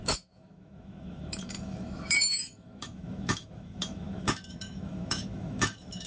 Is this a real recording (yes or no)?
no